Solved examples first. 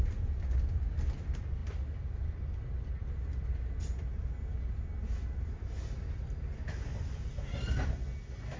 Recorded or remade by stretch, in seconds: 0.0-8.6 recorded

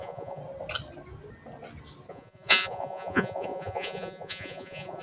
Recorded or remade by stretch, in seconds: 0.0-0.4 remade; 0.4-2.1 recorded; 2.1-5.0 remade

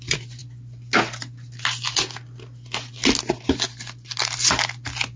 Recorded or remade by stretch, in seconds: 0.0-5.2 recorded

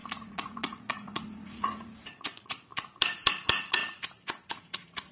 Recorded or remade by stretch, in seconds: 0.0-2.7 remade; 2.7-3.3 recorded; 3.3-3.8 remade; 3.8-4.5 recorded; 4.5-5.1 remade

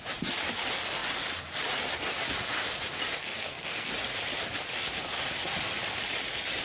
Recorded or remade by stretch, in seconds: 0.0-3.3 recorded; 3.3-3.9 remade; 3.9-6.6 recorded

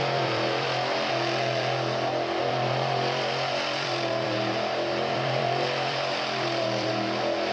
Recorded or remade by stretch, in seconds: 0.0-1.1 remade; 1.1-2.4 recorded; 2.4-6.9 remade; 6.9-7.5 recorded

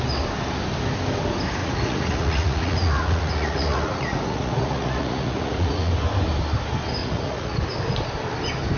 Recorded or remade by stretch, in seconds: 0.0-1.6 recorded; 1.6-5.9 remade; 5.9-7.0 recorded; 7.0-7.6 remade; 7.6-8.8 recorded